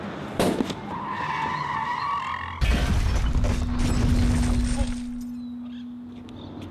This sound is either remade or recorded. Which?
recorded